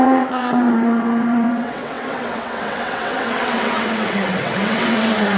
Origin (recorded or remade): remade